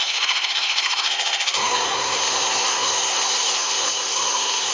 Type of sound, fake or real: fake